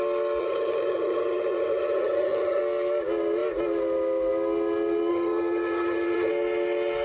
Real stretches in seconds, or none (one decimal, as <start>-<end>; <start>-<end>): 0.0-0.4; 2.6-5.1; 6.3-7.0